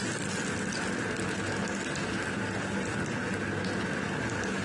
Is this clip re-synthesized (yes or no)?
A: no